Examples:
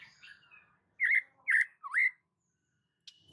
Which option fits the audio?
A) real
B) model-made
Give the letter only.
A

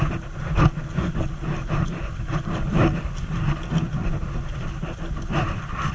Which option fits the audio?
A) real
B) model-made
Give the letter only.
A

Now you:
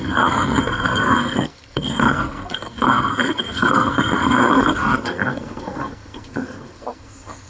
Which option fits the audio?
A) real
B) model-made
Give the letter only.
B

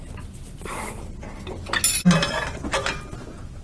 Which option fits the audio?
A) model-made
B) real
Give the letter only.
B